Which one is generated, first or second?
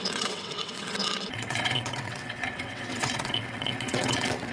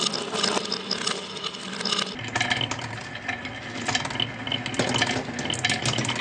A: first